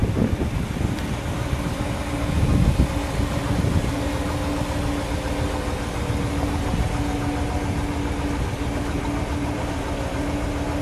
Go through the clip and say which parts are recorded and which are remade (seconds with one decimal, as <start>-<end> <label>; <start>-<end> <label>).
0.0-2.7 remade; 2.7-10.8 recorded